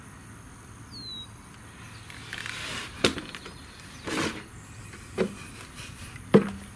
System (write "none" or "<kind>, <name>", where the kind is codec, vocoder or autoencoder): none